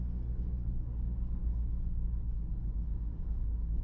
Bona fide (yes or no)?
no